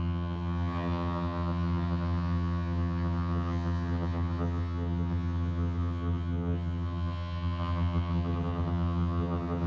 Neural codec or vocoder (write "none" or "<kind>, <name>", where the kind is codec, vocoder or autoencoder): vocoder, HiFi-GAN